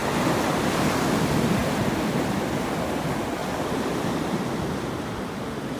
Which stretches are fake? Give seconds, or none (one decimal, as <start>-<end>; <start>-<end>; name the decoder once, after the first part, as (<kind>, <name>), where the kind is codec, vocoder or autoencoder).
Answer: 1.6-2.2 (vocoder, BigVGAN v2); 3.4-4.4